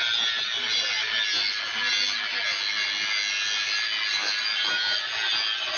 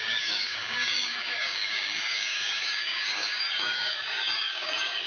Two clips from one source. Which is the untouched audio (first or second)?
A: first